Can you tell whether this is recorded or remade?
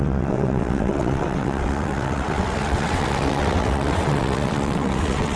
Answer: remade